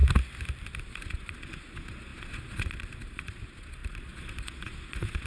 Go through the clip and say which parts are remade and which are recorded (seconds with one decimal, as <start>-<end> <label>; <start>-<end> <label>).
0.0-0.8 recorded; 0.8-5.3 remade